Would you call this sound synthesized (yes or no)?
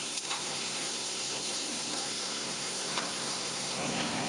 yes